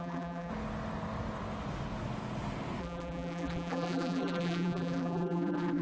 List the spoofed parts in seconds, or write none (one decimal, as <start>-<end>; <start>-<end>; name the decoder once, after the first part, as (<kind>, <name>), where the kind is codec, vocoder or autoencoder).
0.0-0.5 (vocoder, BigVGAN v2); 2.8-5.8